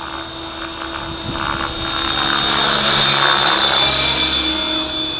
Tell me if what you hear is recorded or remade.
recorded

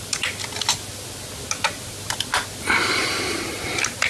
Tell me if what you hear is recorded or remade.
recorded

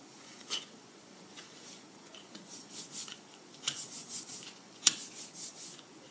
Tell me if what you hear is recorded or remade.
remade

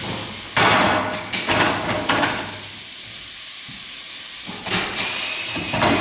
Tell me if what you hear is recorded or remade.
recorded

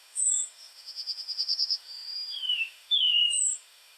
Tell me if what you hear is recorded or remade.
remade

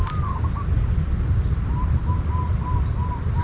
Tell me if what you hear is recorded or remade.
recorded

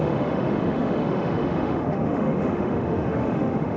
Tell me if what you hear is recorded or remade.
remade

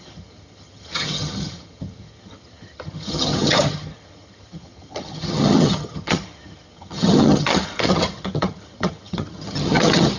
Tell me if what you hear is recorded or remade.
remade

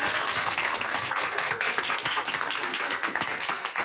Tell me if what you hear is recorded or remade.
remade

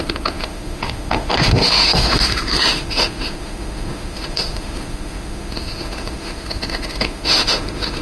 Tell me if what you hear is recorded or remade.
remade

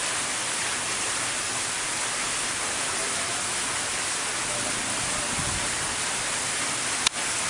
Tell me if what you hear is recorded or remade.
recorded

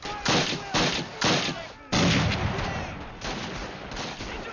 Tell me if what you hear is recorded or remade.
recorded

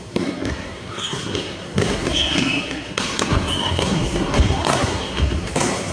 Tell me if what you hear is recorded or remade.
remade